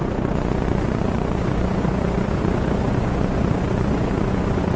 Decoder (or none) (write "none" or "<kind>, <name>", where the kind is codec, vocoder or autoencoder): vocoder, Vocos